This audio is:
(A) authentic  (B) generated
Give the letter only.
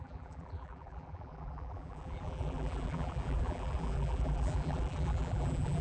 B